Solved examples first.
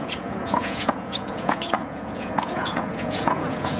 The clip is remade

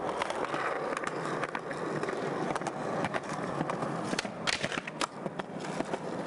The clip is recorded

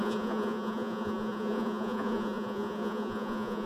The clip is remade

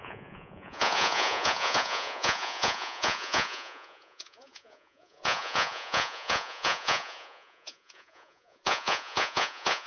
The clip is remade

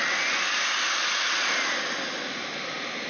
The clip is recorded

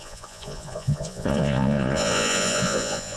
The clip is remade